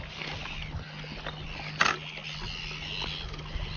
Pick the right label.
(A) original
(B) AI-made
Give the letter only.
A